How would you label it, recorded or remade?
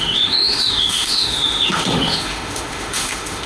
remade